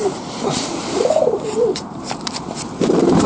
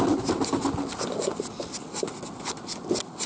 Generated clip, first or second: first